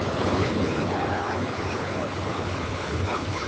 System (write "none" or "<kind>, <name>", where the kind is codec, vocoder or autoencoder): codec, HILCodec